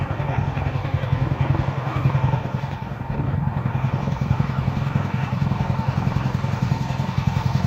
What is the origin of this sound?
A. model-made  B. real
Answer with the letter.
A